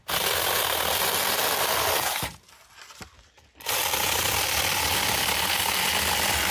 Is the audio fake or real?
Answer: real